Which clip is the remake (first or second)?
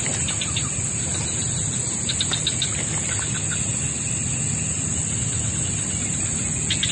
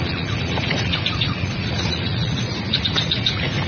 second